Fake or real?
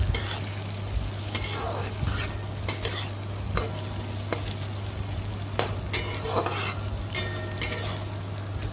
real